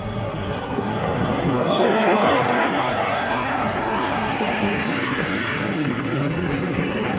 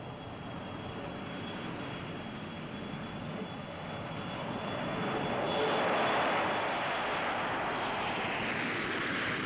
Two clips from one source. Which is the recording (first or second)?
second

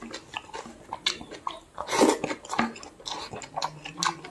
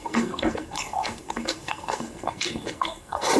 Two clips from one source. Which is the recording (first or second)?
first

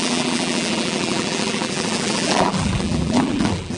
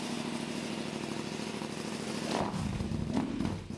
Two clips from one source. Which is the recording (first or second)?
second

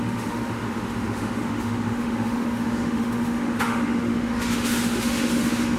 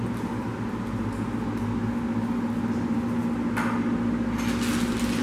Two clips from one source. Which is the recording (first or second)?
second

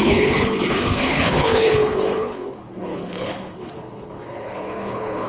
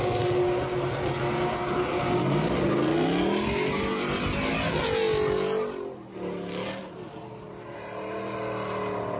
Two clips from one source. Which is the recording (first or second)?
second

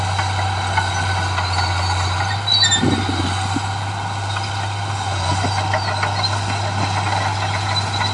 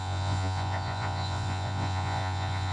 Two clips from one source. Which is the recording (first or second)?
first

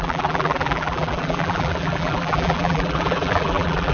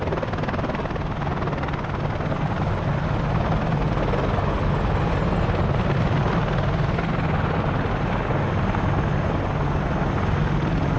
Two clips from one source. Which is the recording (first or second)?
second